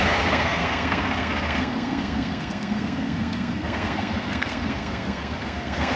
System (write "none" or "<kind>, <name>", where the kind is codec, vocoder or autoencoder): codec, SNAC